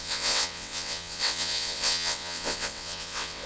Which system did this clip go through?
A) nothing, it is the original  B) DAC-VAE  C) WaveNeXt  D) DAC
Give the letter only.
C